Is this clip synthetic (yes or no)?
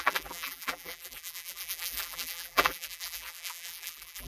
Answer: yes